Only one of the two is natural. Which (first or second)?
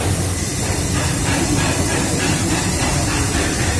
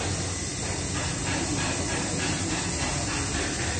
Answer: second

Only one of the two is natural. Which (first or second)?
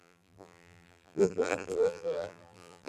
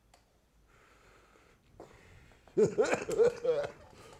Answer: second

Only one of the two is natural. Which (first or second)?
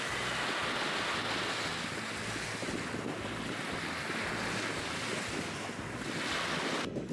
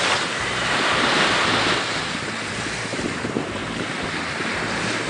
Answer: first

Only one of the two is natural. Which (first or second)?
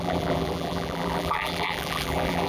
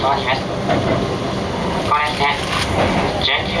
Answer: second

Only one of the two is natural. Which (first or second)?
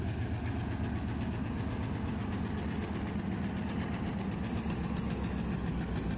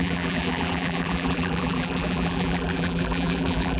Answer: first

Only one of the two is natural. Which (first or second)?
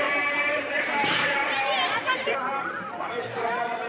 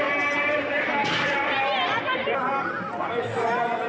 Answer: second